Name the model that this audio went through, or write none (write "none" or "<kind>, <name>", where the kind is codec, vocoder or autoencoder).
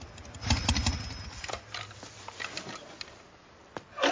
none